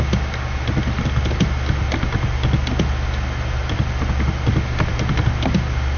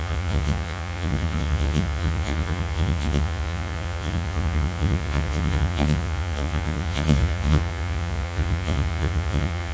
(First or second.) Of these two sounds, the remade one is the second